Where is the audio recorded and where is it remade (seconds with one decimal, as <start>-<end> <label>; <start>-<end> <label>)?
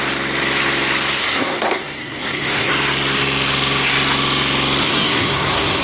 0.0-1.2 recorded; 1.2-2.7 remade; 2.7-4.8 recorded; 4.8-5.8 remade